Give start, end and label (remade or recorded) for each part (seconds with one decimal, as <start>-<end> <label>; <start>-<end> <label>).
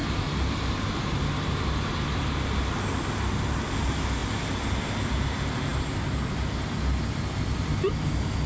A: 0.0-8.5 recorded